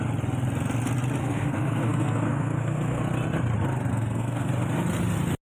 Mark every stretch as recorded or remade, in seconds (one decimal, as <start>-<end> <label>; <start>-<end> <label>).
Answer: 0.0-1.2 recorded; 1.2-3.0 remade; 3.0-3.9 recorded; 3.9-4.5 remade; 4.5-5.4 recorded